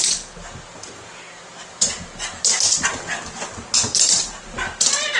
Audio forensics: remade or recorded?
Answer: recorded